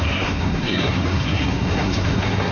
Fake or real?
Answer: fake